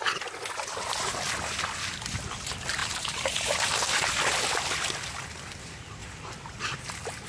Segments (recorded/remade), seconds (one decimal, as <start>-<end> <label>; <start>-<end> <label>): 0.0-2.8 recorded; 2.8-3.7 remade; 3.7-6.0 recorded; 6.0-6.6 remade; 6.6-7.3 recorded